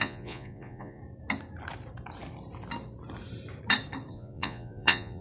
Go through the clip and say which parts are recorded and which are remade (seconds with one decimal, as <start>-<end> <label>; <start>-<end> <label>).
0.0-1.0 remade; 1.0-4.1 recorded; 4.1-5.2 remade